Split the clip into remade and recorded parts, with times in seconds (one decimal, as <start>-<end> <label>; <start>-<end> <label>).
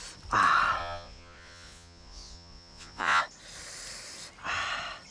0.0-0.8 recorded; 0.8-3.2 remade; 3.2-5.1 recorded